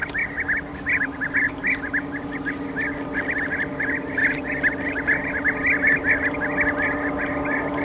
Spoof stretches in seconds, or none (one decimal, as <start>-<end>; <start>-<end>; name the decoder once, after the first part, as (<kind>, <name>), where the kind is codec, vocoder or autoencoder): none